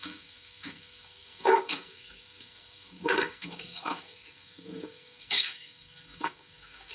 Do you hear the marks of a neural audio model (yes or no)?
yes